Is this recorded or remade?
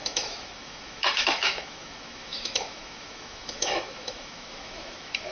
remade